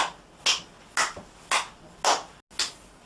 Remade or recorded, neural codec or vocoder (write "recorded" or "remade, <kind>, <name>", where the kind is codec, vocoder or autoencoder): recorded